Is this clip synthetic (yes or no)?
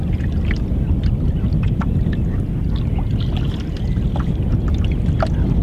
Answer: no